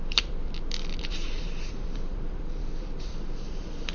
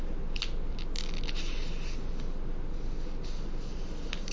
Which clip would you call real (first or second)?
second